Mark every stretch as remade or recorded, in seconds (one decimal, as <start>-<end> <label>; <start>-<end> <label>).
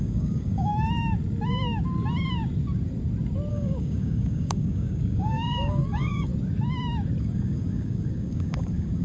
0.0-0.7 remade; 0.7-3.5 recorded; 3.5-6.3 remade; 6.3-7.2 recorded; 7.2-9.0 remade